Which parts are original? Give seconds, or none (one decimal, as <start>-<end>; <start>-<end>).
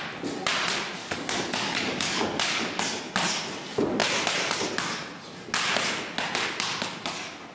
0.0-1.0; 2.8-7.5